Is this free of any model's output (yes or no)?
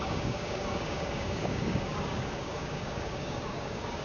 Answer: no